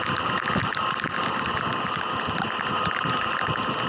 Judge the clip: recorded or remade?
recorded